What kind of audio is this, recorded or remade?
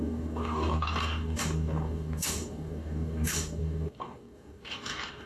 remade